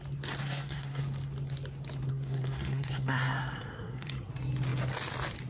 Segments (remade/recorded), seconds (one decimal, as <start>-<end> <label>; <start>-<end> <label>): 0.0-0.4 recorded; 0.4-1.0 remade; 1.0-2.1 recorded; 2.1-4.3 remade; 4.3-5.5 recorded